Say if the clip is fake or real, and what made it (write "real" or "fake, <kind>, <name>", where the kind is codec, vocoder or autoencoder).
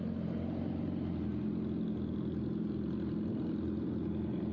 real